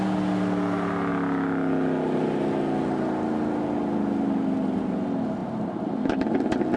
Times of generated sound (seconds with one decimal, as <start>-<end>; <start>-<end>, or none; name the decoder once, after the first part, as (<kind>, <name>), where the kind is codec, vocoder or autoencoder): none